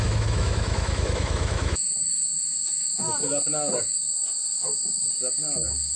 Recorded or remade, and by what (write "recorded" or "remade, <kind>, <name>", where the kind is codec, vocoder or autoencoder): remade, autoencoder, DAC-VAE